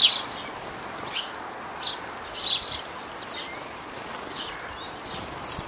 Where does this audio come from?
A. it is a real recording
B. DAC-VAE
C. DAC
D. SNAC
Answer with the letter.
A